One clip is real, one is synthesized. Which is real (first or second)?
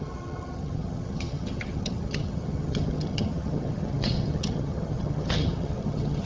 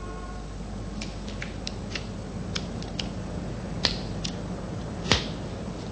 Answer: second